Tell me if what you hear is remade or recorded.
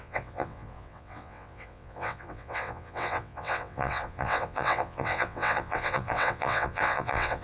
remade